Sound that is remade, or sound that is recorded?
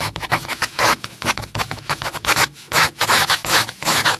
remade